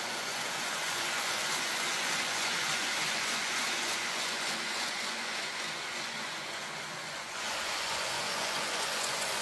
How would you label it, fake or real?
fake